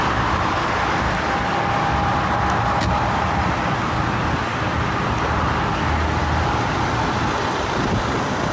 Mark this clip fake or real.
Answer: real